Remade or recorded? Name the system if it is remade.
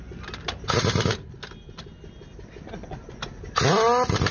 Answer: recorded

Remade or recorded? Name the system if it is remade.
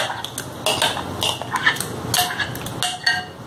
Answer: recorded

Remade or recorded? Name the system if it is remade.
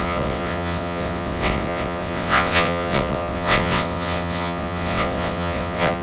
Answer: remade, vocoder, WaveNeXt